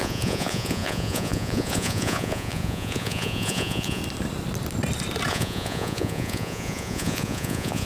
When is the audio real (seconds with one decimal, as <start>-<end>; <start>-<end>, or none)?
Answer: 4.0-5.3